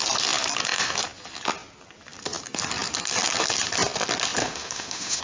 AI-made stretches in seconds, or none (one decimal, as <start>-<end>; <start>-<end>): 4.4-5.2